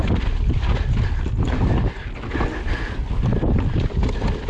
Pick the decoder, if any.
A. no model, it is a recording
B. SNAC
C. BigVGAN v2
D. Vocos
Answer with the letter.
A